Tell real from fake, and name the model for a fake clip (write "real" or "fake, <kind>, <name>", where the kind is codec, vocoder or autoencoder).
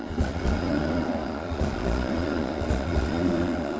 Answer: fake, vocoder, Vocos